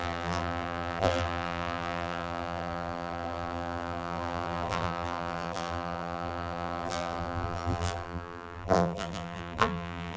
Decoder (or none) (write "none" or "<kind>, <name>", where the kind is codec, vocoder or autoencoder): vocoder, BigVGAN v2